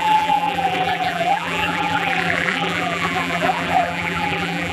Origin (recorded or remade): remade